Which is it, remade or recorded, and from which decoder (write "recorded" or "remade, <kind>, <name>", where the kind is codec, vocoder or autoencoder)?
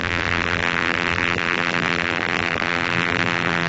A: remade, vocoder, BigVGAN v2